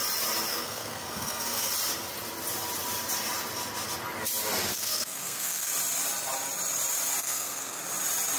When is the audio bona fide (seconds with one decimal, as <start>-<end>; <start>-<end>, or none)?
0.0-0.5; 1.7-4.7; 5.7-7.2; 7.8-8.4